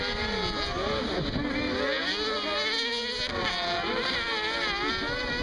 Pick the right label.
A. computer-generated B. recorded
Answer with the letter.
B